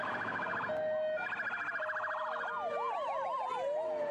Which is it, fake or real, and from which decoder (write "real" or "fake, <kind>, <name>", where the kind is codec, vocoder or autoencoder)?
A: real